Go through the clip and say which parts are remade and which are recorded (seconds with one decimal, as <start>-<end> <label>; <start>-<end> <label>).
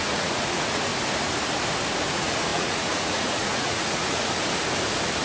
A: 0.0-0.9 remade; 0.9-2.1 recorded; 2.1-4.3 remade; 4.3-5.2 recorded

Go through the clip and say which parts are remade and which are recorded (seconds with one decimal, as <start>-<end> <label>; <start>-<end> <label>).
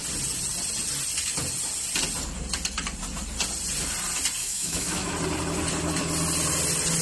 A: 0.0-4.4 recorded; 4.4-5.1 remade; 5.1-7.0 recorded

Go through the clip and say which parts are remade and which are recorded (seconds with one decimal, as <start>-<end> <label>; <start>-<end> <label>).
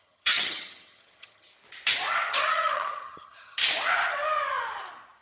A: 0.0-1.5 remade; 1.5-2.3 recorded; 2.3-3.6 remade; 3.6-5.2 recorded